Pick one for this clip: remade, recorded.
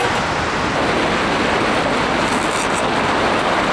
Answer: recorded